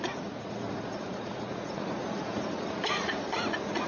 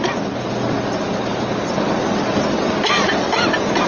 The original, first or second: second